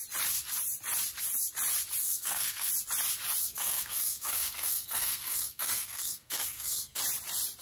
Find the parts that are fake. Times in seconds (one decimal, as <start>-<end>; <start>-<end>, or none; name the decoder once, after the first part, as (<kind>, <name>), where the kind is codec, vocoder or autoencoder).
2.0-2.7 (codec, SNAC); 3.4-7.0